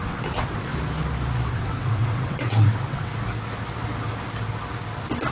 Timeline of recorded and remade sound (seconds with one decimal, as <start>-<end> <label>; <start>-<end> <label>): 0.0-0.7 remade; 0.7-1.5 recorded; 1.5-3.1 remade; 3.1-5.3 recorded